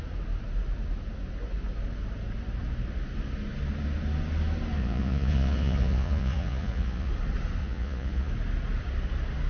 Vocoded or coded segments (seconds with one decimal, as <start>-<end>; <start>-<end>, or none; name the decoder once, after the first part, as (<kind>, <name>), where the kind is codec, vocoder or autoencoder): 4.8-7.1 (vocoder, Vocos); 7.6-8.3